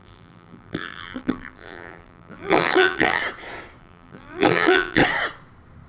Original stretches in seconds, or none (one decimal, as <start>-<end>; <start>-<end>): 3.2-3.8; 5.0-5.9